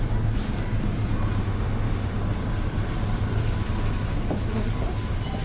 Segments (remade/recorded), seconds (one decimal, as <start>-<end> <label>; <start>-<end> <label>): 0.0-1.4 recorded; 1.4-2.2 remade; 2.2-5.4 recorded